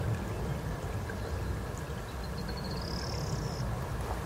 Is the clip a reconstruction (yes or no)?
no